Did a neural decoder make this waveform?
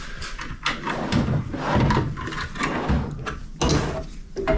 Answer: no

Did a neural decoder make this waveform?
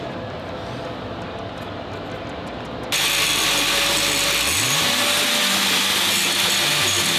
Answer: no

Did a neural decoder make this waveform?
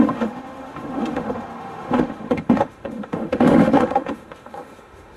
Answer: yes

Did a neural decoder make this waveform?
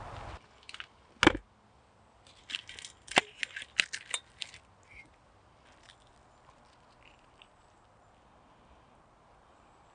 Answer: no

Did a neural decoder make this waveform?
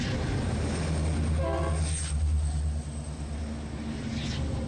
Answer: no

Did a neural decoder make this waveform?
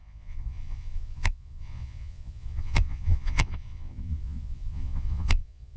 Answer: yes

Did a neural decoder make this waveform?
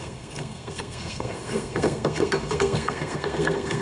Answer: yes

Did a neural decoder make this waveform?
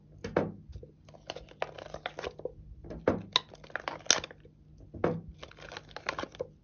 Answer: no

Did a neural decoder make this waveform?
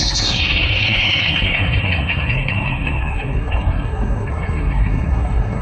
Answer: yes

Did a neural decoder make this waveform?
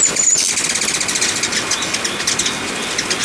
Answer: no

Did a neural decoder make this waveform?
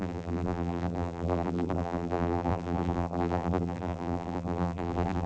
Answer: yes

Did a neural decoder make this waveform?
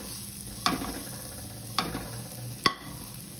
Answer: no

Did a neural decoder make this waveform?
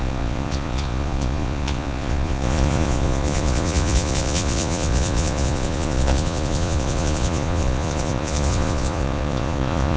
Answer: yes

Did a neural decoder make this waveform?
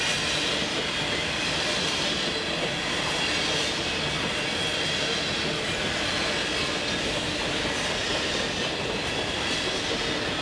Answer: no